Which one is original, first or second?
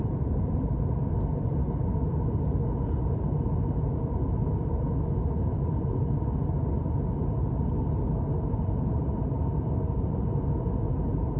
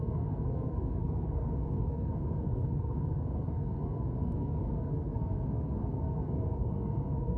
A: first